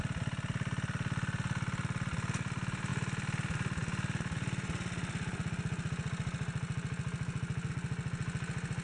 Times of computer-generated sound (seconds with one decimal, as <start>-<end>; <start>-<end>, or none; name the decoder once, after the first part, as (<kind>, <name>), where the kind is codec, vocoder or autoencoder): none